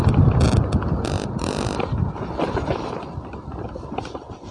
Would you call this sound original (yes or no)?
yes